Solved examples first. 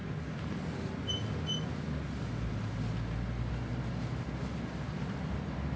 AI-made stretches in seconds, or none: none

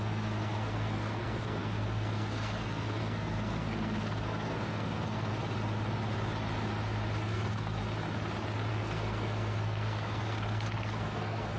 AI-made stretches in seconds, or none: 0.0-5.3 (codec, SNAC); 7.2-7.8; 8.7-11.6

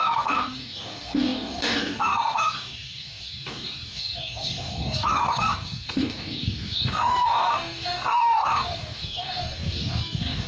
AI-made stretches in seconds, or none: 0.0-10.5 (codec, DAC)

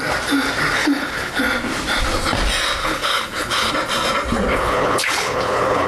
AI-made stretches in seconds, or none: 0.8-1.4 (codec, HILCodec); 2.8-3.7; 4.5-5.9